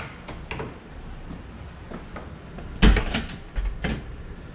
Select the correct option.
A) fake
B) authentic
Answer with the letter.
B